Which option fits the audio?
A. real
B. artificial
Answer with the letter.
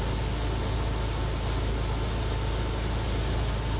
A